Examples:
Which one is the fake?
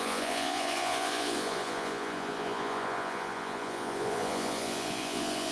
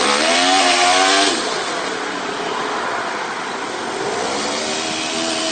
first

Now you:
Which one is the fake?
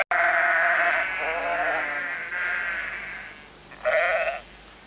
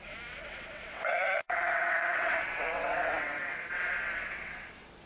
second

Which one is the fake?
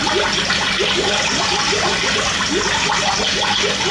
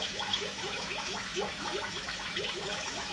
second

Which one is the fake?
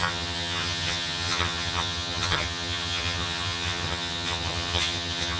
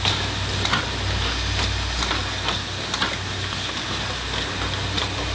first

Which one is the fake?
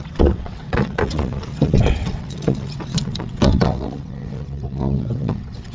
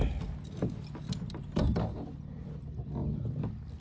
first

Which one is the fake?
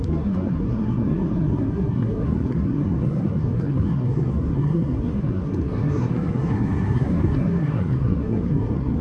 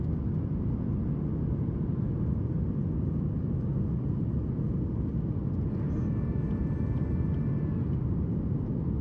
first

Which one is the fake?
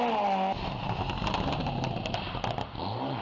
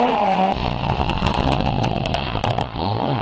second